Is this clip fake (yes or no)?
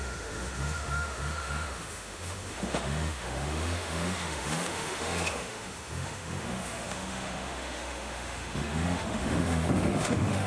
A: yes